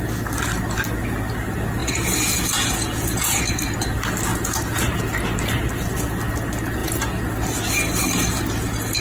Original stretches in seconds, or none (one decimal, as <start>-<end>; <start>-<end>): 0.0-1.8; 3.4-4.3; 5.0-6.8; 7.3-9.0